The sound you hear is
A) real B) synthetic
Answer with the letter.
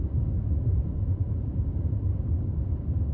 A